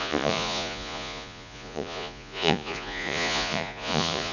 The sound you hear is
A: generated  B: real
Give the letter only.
A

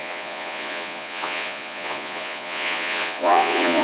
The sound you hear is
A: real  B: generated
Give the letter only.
B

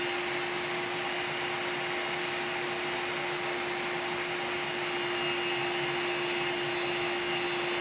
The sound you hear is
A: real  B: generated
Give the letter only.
A